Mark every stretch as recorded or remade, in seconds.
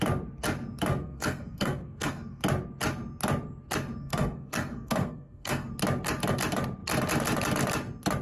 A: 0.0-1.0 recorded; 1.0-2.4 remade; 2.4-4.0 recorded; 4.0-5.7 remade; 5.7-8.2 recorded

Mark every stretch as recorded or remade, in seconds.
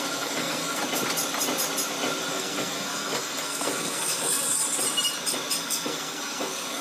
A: 0.0-0.8 remade; 0.8-2.3 recorded; 2.3-4.6 remade; 4.6-5.6 recorded; 5.6-6.8 remade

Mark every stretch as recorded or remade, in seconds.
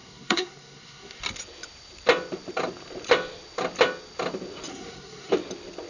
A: 0.0-1.2 remade; 1.2-4.7 recorded; 4.7-5.3 remade; 5.3-5.9 recorded